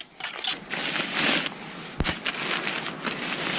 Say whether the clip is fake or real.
real